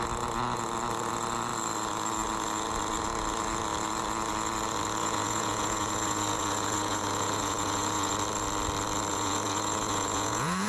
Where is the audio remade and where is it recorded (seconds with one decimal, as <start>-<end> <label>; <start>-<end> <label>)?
0.0-5.0 recorded; 5.0-8.1 remade; 8.1-9.1 recorded; 9.1-10.7 remade